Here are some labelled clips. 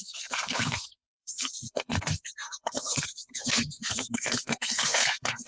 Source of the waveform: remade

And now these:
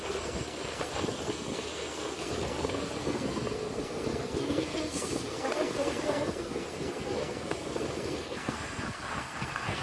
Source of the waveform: remade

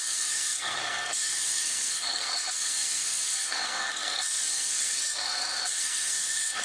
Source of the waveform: remade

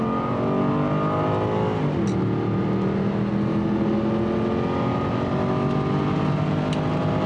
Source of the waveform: recorded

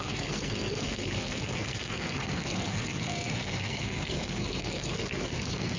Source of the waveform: remade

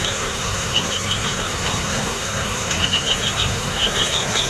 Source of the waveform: remade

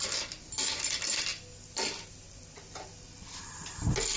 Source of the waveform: recorded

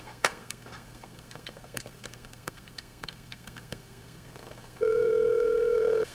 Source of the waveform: remade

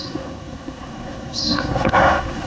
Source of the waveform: remade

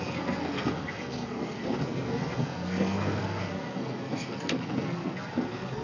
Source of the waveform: remade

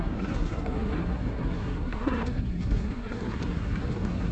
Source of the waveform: remade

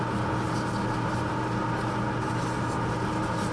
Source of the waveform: recorded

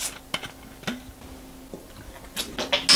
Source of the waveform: recorded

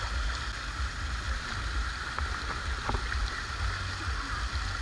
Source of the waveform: recorded